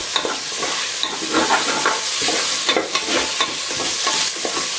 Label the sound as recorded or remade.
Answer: recorded